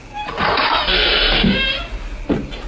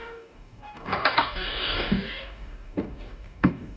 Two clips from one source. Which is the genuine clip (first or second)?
first